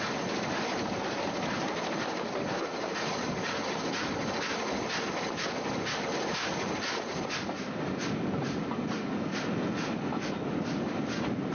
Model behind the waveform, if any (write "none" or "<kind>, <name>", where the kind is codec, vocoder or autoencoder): none